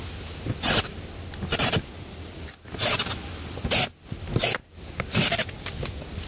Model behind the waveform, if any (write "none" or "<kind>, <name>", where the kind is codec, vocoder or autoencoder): none